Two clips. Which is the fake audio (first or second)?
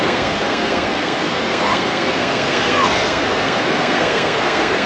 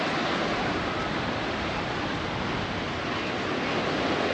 first